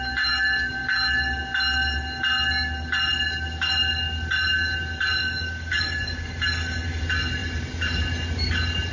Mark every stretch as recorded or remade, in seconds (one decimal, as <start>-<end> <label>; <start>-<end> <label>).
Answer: 0.0-5.2 recorded; 5.2-7.0 remade; 7.0-8.9 recorded